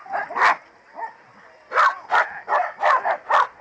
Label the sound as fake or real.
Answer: real